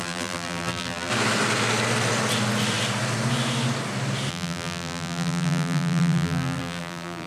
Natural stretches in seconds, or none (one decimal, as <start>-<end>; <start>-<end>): 1.1-4.3